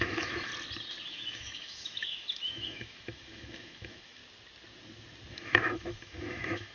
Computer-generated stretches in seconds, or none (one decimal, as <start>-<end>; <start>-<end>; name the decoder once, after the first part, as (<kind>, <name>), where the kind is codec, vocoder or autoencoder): 0.0-0.5 (autoencoder, DAC-VAE); 1.1-4.2; 5.3-6.7